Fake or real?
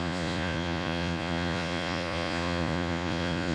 fake